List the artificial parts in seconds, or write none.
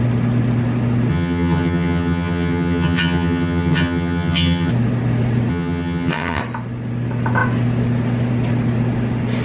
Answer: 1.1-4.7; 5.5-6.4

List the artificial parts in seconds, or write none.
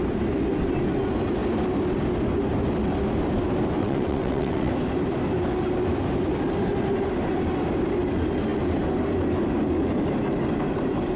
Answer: 3.8-4.7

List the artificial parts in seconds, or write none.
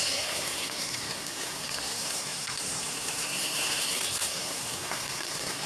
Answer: 0.0-5.7